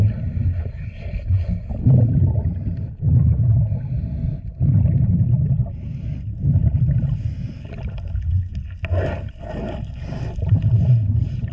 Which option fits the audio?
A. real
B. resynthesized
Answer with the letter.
A